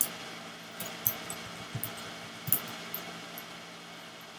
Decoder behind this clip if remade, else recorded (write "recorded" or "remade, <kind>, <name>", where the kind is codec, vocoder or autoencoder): recorded